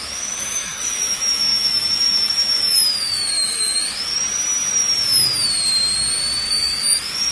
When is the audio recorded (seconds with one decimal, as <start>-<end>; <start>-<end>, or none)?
4.1-6.5